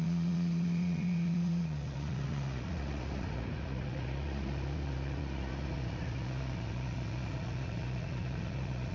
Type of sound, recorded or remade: remade